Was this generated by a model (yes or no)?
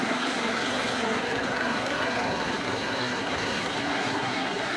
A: yes